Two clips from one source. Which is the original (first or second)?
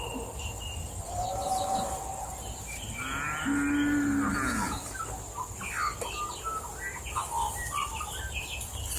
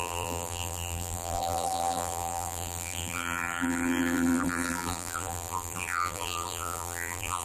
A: first